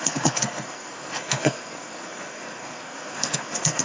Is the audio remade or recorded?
remade